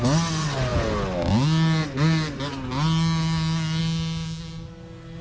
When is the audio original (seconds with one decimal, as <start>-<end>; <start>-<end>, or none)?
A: 0.0-5.2